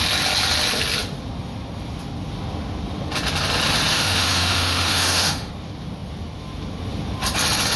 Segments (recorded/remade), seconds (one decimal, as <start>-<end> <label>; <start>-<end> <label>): 0.0-3.9 recorded; 3.9-5.5 remade; 5.5-7.8 recorded